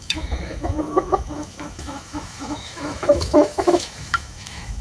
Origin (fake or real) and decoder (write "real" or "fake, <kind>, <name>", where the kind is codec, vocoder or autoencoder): fake, autoencoder, DAC-VAE